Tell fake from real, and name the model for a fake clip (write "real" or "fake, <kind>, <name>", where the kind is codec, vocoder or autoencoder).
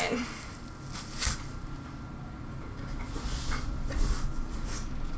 real